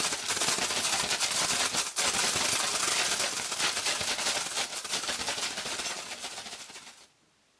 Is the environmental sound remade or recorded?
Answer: recorded